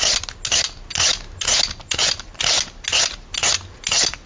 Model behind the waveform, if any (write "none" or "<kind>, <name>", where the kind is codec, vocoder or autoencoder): none